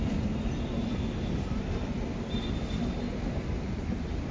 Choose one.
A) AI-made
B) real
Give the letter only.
B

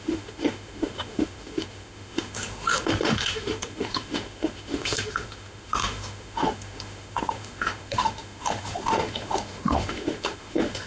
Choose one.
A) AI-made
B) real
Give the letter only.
A